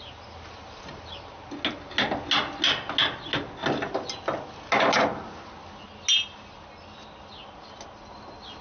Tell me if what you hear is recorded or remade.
recorded